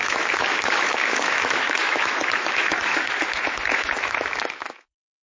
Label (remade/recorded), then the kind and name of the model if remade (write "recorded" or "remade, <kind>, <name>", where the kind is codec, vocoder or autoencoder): remade, autoencoder, DAC-VAE